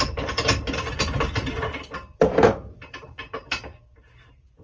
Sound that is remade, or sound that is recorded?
remade